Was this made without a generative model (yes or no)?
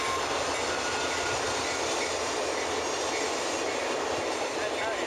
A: yes